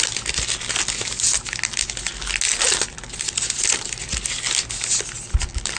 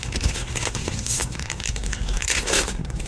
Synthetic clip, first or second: second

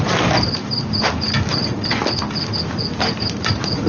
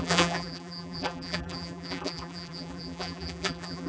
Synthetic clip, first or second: second